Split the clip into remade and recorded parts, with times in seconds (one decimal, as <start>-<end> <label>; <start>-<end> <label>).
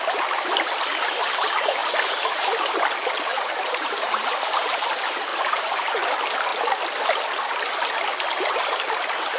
0.0-3.3 recorded; 3.3-4.5 remade; 4.5-5.3 recorded; 5.3-5.9 remade; 5.9-9.4 recorded